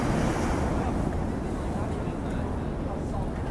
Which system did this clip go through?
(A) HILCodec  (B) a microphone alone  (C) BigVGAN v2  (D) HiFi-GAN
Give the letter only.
B